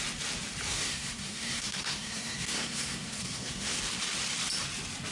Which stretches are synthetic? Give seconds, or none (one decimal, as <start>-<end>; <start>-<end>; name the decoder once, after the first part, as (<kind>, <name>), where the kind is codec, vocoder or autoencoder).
0.7-3.8 (codec, SNAC)